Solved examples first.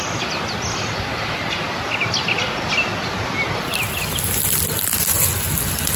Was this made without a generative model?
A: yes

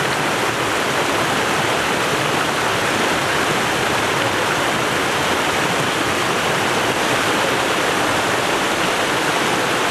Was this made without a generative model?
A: yes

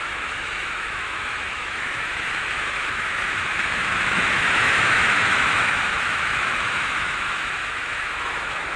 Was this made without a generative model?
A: no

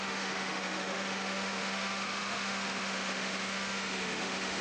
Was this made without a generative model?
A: no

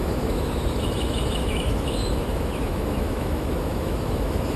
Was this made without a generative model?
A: no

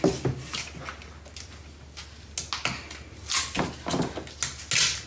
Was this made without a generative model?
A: yes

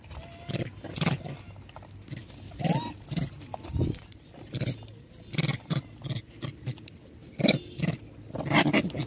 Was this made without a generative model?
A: yes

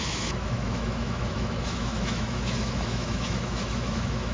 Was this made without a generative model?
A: no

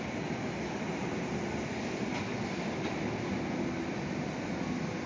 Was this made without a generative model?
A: yes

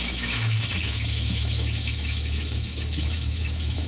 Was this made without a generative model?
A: no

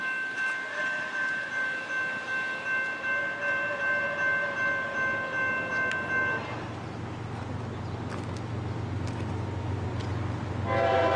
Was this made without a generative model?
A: yes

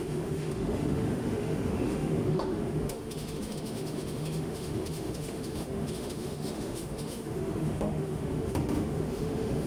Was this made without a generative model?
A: no